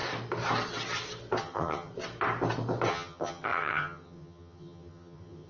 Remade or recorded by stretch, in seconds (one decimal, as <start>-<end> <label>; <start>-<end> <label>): 0.0-1.4 recorded; 1.4-1.9 remade; 1.9-2.9 recorded; 2.9-5.5 remade